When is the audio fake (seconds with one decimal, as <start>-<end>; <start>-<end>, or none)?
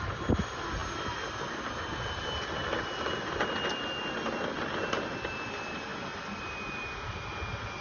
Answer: none